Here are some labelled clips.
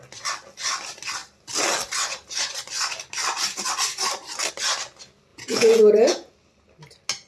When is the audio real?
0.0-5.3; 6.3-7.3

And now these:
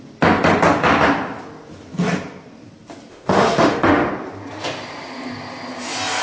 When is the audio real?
0.0-3.1; 4.1-6.2